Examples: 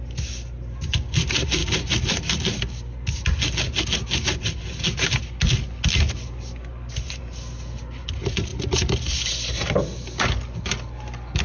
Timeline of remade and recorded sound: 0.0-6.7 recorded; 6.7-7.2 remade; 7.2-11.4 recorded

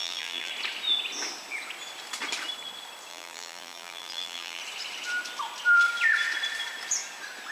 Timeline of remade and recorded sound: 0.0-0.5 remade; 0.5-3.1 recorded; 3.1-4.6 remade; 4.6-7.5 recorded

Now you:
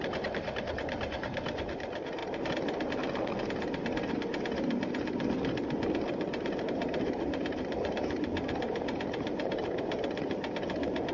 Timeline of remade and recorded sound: 0.0-2.2 remade; 2.2-6.6 recorded; 6.6-11.1 remade